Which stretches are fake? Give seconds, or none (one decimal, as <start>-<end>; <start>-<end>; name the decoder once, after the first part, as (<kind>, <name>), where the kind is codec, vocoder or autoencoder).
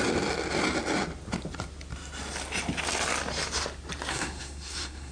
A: 4.1-5.1 (codec, SNAC)